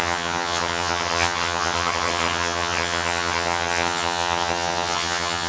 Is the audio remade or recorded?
remade